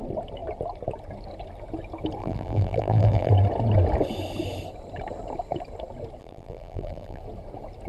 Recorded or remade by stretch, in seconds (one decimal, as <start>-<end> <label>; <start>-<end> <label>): 0.0-2.2 recorded; 2.2-3.3 remade; 3.3-6.2 recorded; 6.2-7.2 remade; 7.2-7.9 recorded